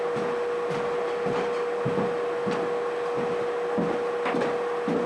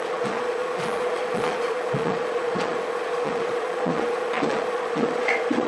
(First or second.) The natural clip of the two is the first